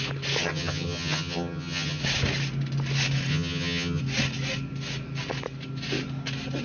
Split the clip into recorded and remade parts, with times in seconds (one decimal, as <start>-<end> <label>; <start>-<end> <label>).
0.0-0.4 recorded; 0.4-2.0 remade; 2.0-3.3 recorded; 3.3-4.0 remade; 4.0-6.6 recorded